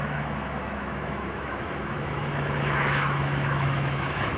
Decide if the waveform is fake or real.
fake